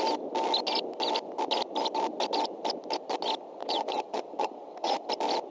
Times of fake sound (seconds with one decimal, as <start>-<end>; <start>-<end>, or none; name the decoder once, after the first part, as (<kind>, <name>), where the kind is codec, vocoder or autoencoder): 3.6-5.1 (vocoder, WaveNeXt)